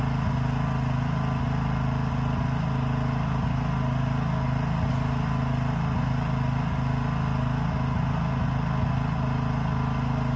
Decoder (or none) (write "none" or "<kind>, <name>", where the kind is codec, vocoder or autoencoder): none